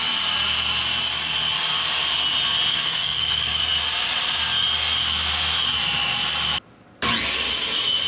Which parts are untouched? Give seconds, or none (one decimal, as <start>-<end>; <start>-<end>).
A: 0.0-2.7; 3.6-8.1